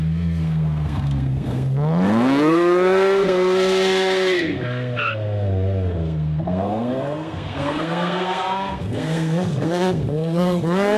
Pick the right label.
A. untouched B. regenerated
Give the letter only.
B